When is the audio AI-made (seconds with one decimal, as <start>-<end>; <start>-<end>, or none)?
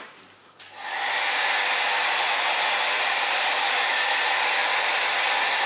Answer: 4.6-5.1